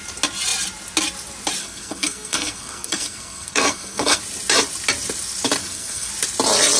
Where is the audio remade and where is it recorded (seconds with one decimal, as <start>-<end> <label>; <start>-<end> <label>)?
0.0-1.6 recorded; 1.6-4.2 remade; 4.2-5.6 recorded; 5.6-6.1 remade; 6.1-6.8 recorded